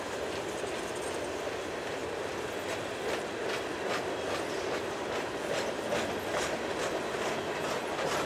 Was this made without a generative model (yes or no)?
yes